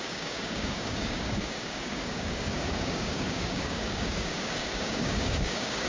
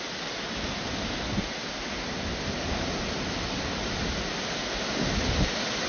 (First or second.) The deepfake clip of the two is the first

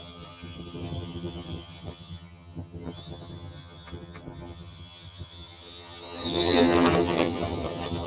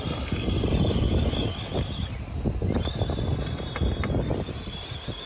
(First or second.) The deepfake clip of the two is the first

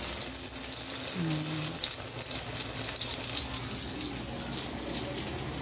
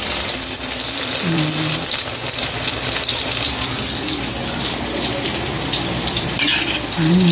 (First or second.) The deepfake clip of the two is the second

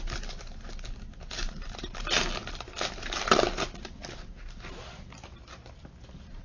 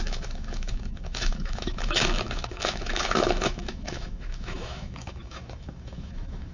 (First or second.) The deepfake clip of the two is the second